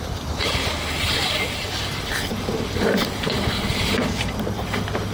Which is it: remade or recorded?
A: recorded